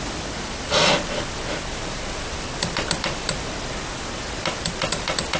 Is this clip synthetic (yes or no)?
no